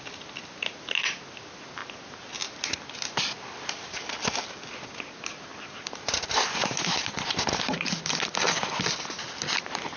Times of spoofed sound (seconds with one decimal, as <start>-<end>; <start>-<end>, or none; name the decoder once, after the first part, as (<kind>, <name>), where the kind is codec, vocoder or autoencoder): none